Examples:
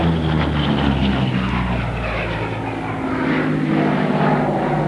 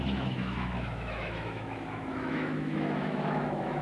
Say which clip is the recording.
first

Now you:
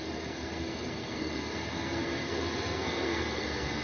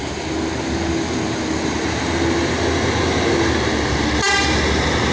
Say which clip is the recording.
second